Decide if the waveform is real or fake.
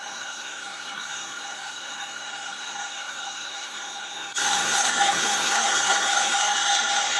fake